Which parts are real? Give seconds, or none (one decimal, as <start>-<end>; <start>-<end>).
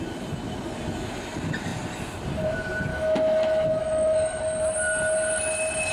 0.0-2.9; 4.4-5.9